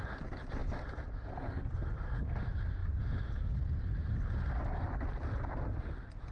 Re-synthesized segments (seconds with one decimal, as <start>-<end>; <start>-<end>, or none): none